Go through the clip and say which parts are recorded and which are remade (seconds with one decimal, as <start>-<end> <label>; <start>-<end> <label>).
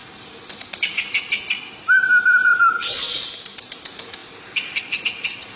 0.0-0.9 remade; 0.9-2.0 recorded; 2.0-2.5 remade; 2.5-4.2 recorded; 4.2-5.0 remade; 5.0-5.6 recorded